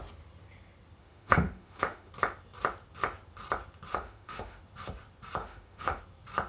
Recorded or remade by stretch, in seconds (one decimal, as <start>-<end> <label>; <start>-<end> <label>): 0.0-1.0 recorded; 1.0-2.1 remade; 2.1-3.9 recorded; 3.9-4.6 remade; 4.6-5.4 recorded; 5.4-6.0 remade; 6.0-6.5 recorded